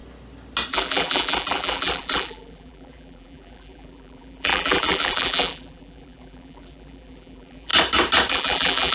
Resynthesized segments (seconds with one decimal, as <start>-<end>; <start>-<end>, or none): 0.7-7.7; 8.3-8.9